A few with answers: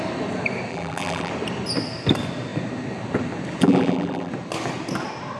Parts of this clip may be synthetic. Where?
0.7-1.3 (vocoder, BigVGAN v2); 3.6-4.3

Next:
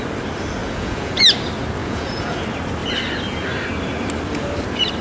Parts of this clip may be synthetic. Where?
0.6-1.2 (vocoder, Vocos); 1.8-2.4